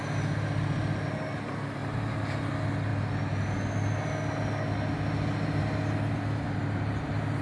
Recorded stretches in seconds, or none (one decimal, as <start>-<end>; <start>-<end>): 0.0-1.8; 2.5-7.4

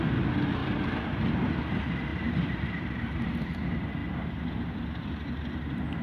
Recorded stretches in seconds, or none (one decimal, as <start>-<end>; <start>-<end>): 0.0-0.6; 1.7-2.1; 3.3-6.0

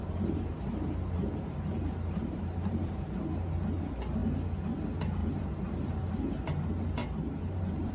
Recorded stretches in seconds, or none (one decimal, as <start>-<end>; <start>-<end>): 3.1-5.2; 6.1-7.0

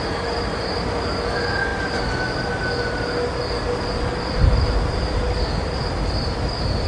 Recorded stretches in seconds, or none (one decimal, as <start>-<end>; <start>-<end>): 1.7-4.9

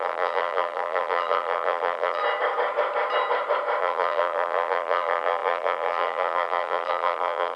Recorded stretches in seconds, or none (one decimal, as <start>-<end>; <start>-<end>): 2.2-3.8

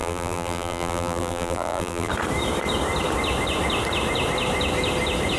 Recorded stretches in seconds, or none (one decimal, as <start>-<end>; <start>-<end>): 2.1-5.4